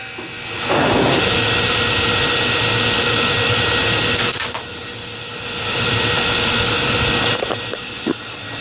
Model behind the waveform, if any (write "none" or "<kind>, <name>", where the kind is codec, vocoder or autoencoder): none